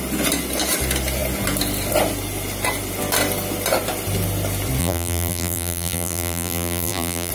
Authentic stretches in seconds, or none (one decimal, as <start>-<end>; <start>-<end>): 0.0-4.8

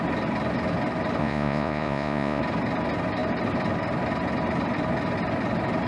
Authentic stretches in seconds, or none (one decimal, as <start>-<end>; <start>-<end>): 0.0-1.2; 2.4-5.9

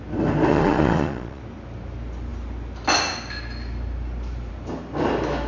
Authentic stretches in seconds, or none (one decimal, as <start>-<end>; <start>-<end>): 0.0-0.5; 1.4-5.5

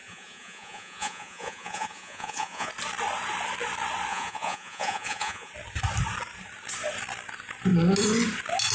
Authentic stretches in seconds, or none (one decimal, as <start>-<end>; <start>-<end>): 2.7-4.1; 5.5-8.7